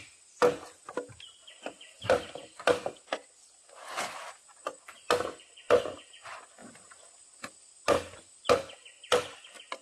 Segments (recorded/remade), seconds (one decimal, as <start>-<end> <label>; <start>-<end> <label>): 0.0-9.8 recorded